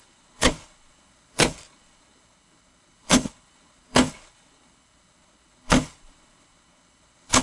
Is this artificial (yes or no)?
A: yes